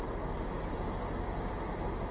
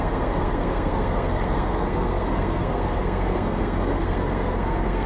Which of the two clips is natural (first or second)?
first